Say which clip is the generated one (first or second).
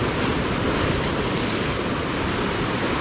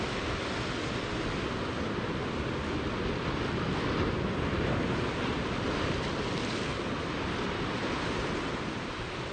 first